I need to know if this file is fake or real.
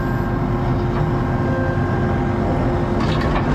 real